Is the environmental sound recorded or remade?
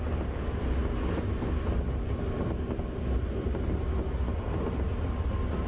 recorded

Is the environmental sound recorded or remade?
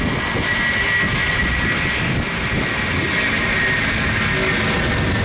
recorded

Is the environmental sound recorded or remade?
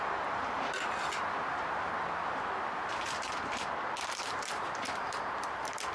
remade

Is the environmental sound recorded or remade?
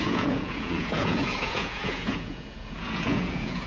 remade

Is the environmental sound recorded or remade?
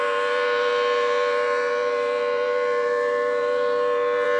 remade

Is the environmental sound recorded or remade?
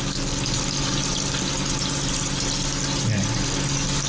recorded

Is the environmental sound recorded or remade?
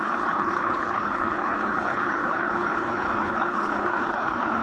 remade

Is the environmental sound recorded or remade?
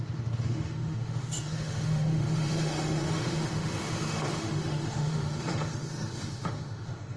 remade